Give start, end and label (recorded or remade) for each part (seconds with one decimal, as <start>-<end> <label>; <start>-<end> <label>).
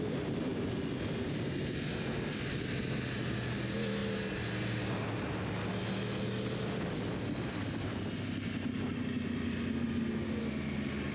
0.0-0.5 recorded; 0.5-2.6 remade; 2.6-11.1 recorded